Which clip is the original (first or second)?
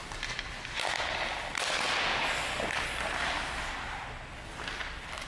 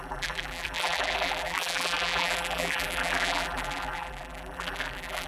first